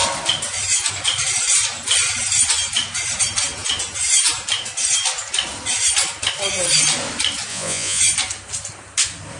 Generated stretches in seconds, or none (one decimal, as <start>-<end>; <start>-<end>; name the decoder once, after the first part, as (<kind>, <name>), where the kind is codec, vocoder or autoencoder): 7.5-8.0 (vocoder, Vocos)